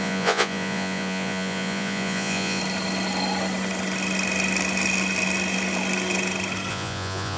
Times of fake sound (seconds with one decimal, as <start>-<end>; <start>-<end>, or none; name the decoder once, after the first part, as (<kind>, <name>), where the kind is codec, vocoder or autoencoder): 0.0-2.6 (vocoder, Vocos); 6.7-7.4